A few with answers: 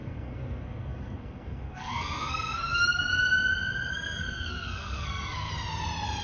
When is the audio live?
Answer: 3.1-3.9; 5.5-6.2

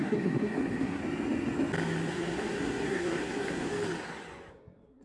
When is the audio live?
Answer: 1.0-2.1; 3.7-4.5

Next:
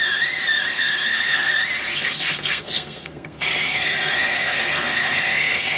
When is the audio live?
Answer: 0.0-0.7; 1.5-1.9